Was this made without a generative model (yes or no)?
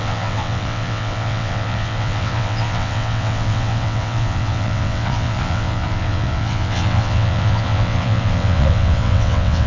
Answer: no